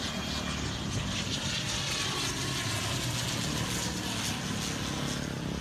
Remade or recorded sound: recorded